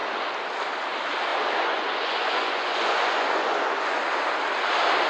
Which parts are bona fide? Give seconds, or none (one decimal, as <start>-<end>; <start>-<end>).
0.0-1.3; 4.0-5.1